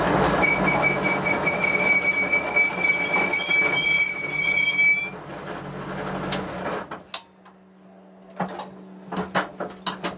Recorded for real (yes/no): yes